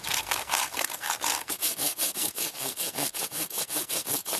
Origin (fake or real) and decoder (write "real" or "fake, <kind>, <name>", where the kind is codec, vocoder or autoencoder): fake, codec, SNAC